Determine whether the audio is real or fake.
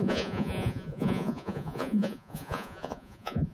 fake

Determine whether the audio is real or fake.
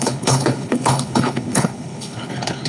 fake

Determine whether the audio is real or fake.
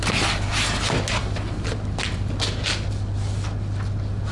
real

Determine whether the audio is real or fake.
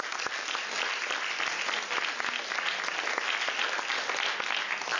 real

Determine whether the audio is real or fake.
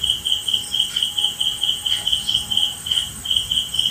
real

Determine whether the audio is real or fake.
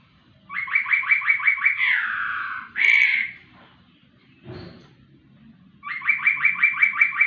fake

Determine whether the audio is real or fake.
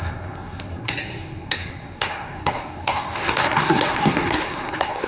fake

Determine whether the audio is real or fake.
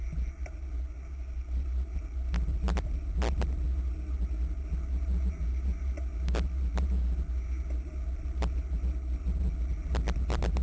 real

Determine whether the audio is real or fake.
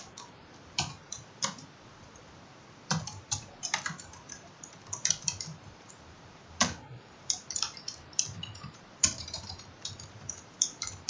fake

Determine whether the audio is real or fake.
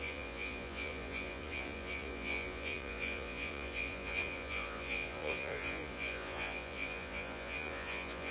fake